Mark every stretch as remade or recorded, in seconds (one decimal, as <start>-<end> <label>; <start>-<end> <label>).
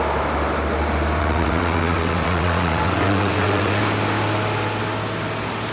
0.0-1.2 recorded; 1.2-3.8 remade; 3.8-5.7 recorded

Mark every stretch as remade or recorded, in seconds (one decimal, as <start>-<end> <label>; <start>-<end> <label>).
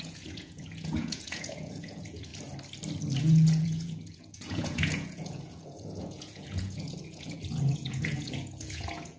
0.0-2.3 remade; 2.3-3.2 recorded; 3.2-9.2 remade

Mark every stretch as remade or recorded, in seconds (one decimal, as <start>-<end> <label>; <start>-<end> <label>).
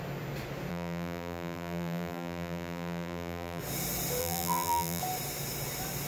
0.0-0.7 recorded; 0.7-3.6 remade; 3.6-4.2 recorded; 4.2-5.0 remade; 5.0-6.1 recorded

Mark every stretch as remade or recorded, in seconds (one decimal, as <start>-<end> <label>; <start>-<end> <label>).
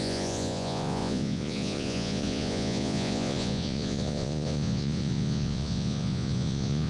0.0-6.9 remade